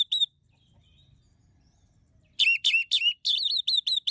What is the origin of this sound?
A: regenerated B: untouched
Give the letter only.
B